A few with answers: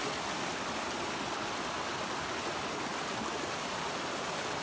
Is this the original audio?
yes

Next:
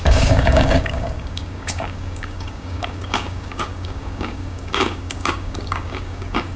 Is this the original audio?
no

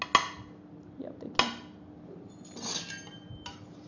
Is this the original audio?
yes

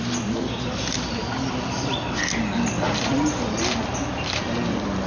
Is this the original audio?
yes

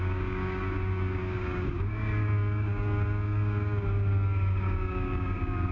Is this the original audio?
no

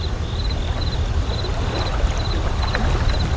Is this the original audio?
yes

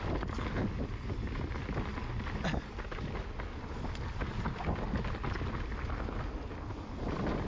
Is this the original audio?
yes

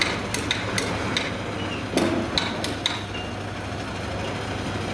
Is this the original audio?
yes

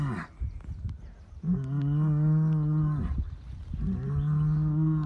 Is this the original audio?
yes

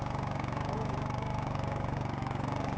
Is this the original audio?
no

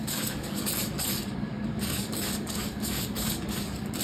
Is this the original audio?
no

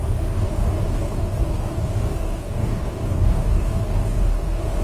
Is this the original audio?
no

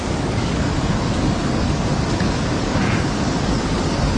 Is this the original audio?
no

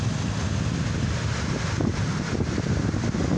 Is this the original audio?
yes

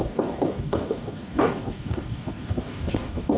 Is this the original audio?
no